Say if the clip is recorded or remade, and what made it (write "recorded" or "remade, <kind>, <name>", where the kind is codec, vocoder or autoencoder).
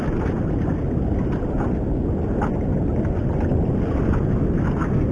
recorded